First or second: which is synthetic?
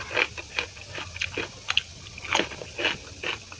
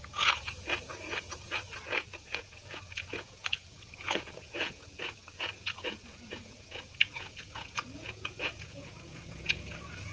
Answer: second